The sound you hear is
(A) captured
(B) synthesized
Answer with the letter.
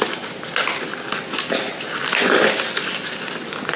A